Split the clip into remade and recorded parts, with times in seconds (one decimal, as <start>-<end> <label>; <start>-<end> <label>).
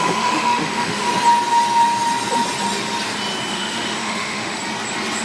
0.0-1.1 remade; 1.1-3.5 recorded; 3.5-4.6 remade; 4.6-5.2 recorded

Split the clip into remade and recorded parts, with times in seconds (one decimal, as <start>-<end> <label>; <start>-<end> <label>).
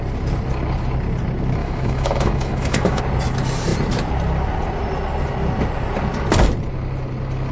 0.0-1.6 recorded; 1.6-3.0 remade; 3.0-7.5 recorded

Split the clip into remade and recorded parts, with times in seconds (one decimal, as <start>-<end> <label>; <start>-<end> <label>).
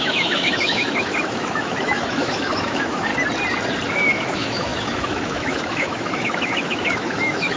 0.0-3.1 remade; 3.1-3.9 recorded; 3.9-7.6 remade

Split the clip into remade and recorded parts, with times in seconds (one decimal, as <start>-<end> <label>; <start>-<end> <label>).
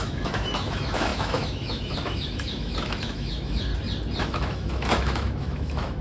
0.0-3.7 remade; 3.7-4.2 recorded; 4.2-6.0 remade